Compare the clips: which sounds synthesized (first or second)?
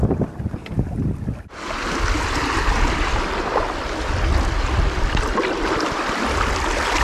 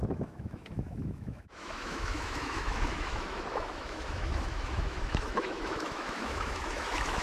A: second